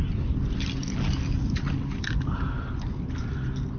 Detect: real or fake real